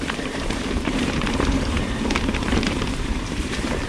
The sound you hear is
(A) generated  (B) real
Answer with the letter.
A